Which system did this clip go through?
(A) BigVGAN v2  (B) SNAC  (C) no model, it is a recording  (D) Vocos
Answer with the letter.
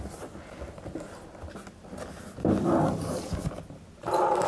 C